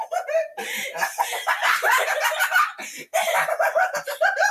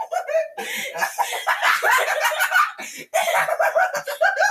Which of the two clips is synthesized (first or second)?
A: first